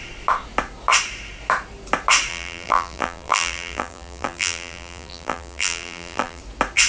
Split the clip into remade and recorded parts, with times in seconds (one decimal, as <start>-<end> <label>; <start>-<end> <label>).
0.0-2.3 recorded; 2.3-6.4 remade; 6.4-6.9 recorded

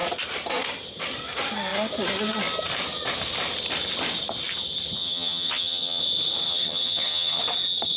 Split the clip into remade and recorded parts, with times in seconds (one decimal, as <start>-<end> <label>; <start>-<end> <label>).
0.0-5.0 recorded; 5.0-6.0 remade; 6.0-6.5 recorded; 6.5-7.4 remade; 7.4-8.0 recorded

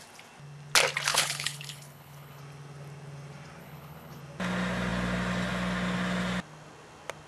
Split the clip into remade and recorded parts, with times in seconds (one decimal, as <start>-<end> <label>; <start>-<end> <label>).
0.0-1.1 recorded; 1.1-2.4 remade; 2.4-3.6 recorded; 3.6-4.2 remade; 4.2-7.3 recorded

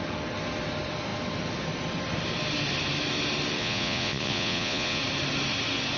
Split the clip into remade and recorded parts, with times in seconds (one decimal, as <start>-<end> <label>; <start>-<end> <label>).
0.0-3.6 recorded; 3.6-5.0 remade; 5.0-6.0 recorded